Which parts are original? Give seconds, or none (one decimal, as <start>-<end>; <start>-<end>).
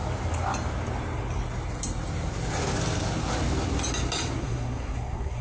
0.0-4.4